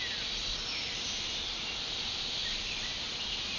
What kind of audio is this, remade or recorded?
recorded